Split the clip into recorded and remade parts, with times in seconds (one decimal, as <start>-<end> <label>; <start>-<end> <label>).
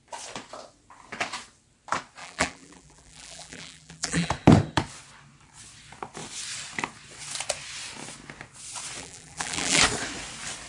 0.0-2.2 recorded; 2.2-4.3 remade; 4.3-9.0 recorded; 9.0-9.8 remade; 9.8-10.7 recorded